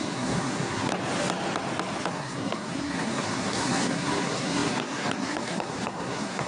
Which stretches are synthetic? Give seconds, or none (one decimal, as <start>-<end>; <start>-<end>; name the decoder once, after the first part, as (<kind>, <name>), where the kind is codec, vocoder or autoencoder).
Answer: 0.0-0.9 (codec, SNAC); 2.1-6.5

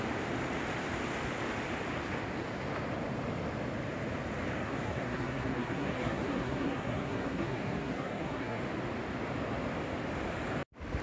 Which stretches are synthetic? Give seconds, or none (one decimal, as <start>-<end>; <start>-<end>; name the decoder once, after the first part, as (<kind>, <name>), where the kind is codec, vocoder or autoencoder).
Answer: 4.6-8.6 (codec, SNAC)

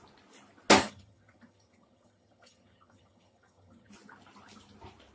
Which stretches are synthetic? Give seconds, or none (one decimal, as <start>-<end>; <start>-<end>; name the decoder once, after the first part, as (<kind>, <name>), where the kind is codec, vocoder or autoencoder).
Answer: 0.8-3.9 (vocoder, HiFi-GAN)